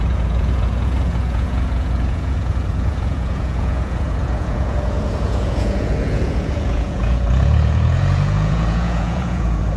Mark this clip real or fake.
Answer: fake